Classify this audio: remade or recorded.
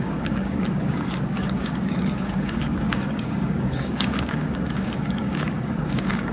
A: remade